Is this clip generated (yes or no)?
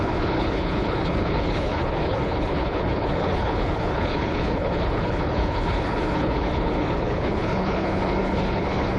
yes